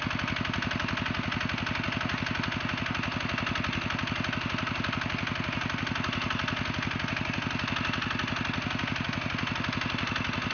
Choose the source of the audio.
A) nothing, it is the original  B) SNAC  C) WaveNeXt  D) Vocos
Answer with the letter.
A